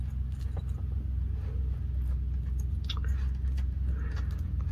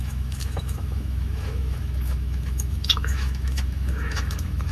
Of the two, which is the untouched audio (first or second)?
first